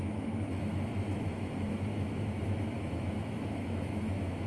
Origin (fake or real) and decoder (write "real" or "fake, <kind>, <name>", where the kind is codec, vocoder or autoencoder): fake, autoencoder, DAC-VAE